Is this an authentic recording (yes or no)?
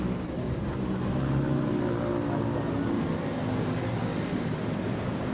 yes